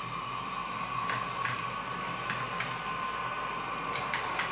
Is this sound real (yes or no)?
yes